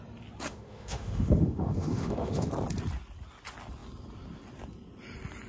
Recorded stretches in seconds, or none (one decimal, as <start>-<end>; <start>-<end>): 0.0-0.5; 2.5-5.5